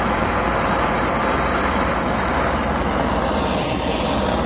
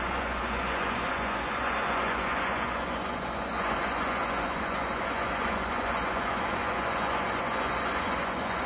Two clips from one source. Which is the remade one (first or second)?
second